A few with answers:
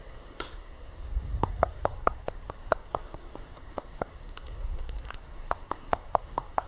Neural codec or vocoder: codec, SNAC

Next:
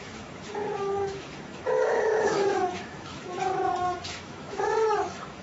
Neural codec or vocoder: autoencoder, DAC-VAE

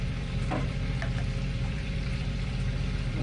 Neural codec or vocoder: vocoder, BigVGAN v2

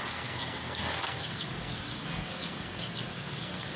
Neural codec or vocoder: codec, SNAC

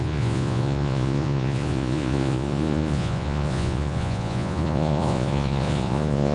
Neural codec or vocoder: vocoder, Vocos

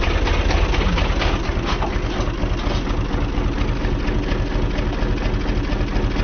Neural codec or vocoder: none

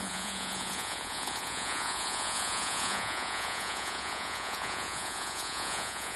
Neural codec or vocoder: vocoder, Vocos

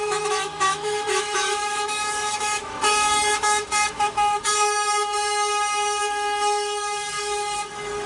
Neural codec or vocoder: autoencoder, DAC-VAE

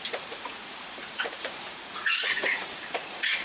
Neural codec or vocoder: vocoder, Vocos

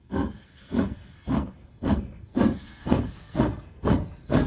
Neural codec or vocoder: codec, SNAC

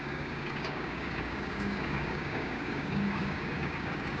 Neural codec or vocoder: codec, DAC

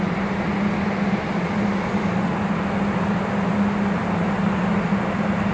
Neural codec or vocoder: none